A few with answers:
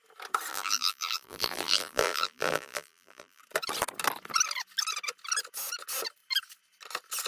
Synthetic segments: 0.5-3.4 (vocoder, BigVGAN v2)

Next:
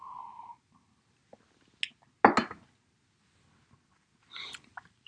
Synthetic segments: 0.0-1.2 (vocoder, BigVGAN v2); 4.3-5.1